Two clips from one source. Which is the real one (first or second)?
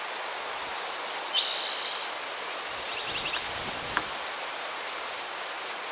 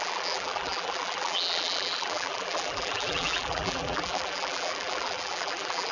first